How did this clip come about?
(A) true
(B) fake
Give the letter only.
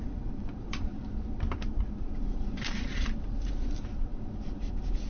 B